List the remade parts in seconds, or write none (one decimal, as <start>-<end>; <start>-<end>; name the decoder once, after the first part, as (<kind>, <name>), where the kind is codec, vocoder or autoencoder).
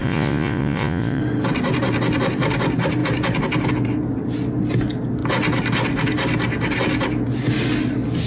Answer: 0.0-1.2 (vocoder, Vocos)